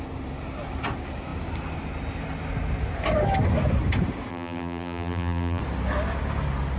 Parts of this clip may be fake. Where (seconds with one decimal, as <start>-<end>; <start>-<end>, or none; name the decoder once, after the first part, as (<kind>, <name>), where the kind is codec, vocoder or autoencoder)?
4.3-5.6 (vocoder, BigVGAN v2)